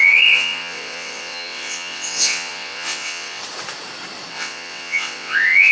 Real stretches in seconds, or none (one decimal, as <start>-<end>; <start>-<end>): 3.4-4.3